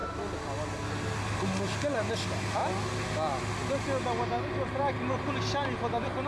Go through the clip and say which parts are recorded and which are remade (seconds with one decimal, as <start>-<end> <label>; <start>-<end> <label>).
0.0-6.3 recorded